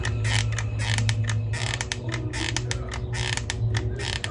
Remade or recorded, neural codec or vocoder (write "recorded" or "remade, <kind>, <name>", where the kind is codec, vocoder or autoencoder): recorded